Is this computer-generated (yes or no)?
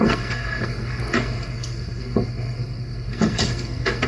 yes